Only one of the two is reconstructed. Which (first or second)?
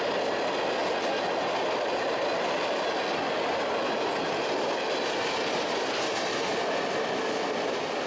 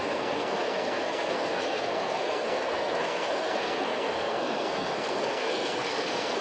second